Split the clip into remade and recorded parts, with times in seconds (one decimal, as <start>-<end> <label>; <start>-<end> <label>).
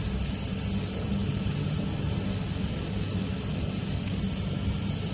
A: 0.0-5.1 recorded